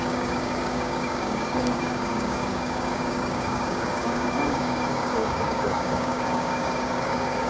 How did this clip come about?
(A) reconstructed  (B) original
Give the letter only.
A